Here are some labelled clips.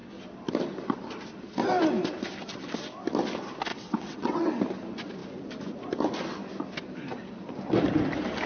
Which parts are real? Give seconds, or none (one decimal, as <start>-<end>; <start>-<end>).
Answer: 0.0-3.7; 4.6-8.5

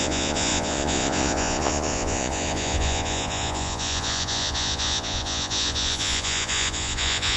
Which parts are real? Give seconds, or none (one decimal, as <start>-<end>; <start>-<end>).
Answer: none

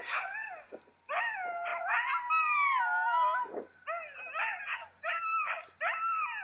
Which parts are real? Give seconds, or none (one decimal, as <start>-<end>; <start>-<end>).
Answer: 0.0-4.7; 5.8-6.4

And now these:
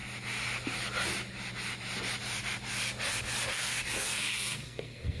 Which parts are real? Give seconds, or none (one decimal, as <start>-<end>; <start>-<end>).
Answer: 0.0-3.5

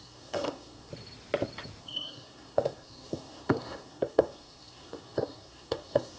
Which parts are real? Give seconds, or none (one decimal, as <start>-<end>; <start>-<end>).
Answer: 0.9-1.8

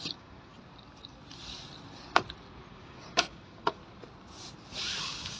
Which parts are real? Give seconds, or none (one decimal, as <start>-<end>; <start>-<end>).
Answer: 0.5-2.7; 3.8-5.0